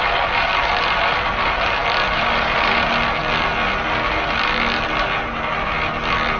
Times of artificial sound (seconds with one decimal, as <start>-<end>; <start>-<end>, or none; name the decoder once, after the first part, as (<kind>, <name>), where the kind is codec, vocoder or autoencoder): none